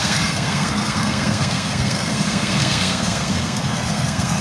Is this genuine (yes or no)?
no